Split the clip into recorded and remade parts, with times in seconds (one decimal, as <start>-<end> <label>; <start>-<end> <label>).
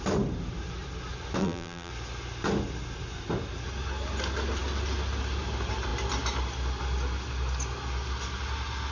0.0-1.4 recorded; 1.4-1.9 remade; 1.9-8.9 recorded